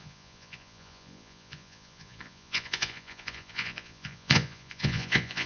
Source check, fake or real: fake